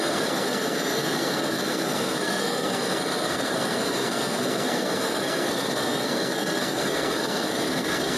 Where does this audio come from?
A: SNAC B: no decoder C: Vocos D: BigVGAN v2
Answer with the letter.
A